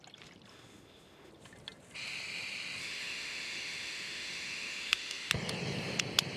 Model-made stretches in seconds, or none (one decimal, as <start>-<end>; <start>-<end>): 0.5-1.3; 2.8-5.3